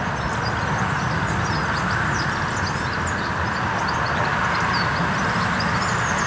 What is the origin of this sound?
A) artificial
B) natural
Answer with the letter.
B